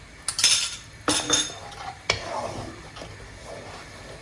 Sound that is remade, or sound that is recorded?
recorded